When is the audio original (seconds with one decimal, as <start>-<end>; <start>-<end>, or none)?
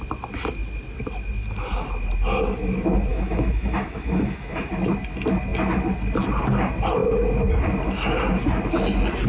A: 0.0-3.1; 4.7-9.3